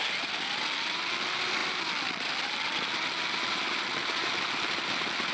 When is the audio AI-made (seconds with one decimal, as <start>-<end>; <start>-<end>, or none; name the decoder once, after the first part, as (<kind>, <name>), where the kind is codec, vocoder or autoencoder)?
none